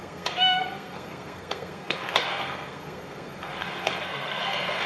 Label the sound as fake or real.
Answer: fake